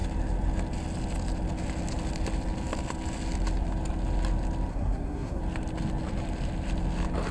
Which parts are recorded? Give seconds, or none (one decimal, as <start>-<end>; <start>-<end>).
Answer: 0.0-4.7; 5.4-7.3

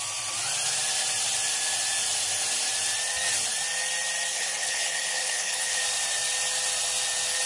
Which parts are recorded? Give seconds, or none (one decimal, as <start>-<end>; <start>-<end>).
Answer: 0.0-4.3; 5.8-7.5

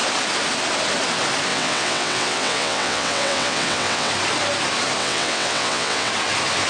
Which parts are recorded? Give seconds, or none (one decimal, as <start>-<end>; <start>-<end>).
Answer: 0.0-1.5; 4.1-5.0; 6.1-6.7

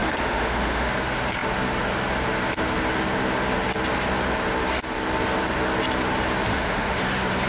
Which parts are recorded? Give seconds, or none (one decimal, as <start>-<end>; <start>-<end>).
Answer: 0.9-6.5; 7.0-7.5

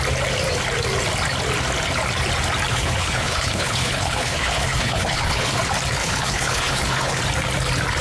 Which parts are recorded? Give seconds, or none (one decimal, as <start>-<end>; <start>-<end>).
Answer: 0.0-2.7; 5.6-6.0; 7.2-8.0